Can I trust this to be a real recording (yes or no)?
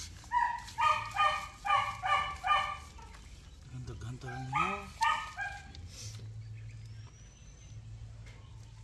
yes